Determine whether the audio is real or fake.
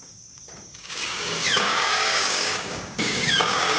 fake